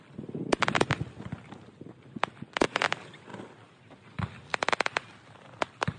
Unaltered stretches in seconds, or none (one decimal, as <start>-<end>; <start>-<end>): 0.0-6.0